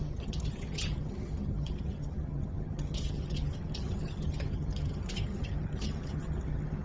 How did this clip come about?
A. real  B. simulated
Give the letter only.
B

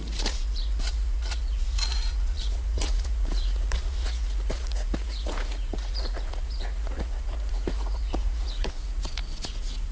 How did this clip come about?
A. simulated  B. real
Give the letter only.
A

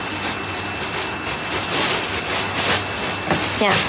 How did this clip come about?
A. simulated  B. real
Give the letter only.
B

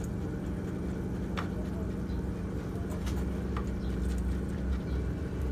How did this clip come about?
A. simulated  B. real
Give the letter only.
B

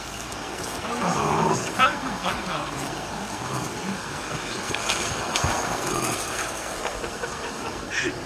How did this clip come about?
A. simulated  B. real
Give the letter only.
A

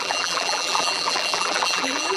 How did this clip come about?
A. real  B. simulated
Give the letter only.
B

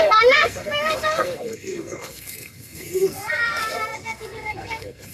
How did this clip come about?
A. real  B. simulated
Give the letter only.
B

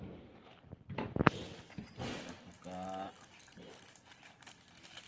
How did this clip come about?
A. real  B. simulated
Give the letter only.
A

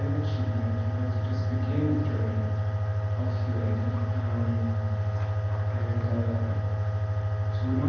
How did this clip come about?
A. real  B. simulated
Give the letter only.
A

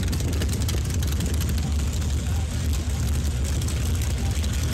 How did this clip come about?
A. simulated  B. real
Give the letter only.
B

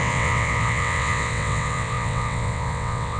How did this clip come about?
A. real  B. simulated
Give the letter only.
B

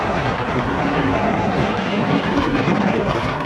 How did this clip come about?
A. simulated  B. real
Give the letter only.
A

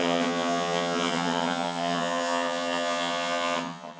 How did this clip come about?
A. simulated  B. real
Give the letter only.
A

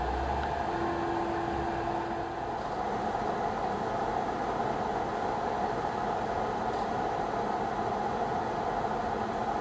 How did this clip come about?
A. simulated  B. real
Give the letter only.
B